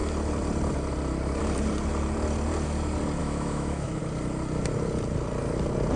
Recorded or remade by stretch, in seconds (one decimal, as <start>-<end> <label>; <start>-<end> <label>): 0.0-3.2 recorded; 3.2-4.0 remade; 4.0-6.0 recorded